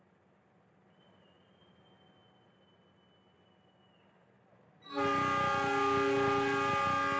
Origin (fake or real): real